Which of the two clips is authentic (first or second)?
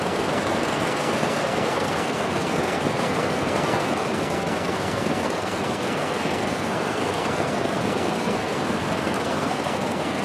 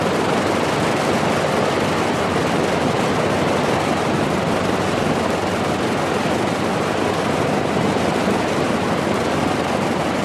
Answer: second